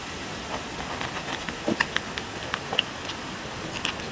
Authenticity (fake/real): real